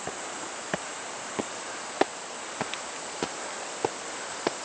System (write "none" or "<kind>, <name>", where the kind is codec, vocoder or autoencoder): none